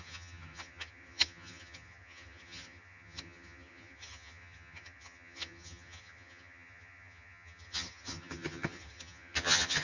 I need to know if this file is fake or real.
fake